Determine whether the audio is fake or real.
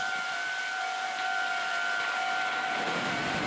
fake